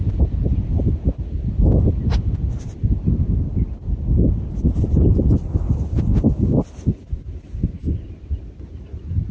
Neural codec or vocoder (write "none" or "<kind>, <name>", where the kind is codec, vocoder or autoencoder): none